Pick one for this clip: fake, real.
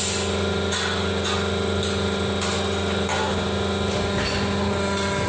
real